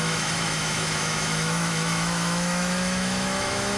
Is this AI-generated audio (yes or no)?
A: yes